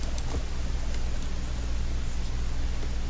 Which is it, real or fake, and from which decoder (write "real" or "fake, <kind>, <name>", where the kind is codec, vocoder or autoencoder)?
real